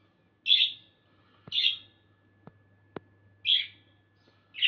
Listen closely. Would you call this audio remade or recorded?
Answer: recorded